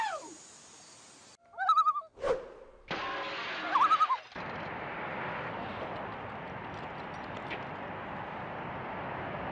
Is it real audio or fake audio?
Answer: real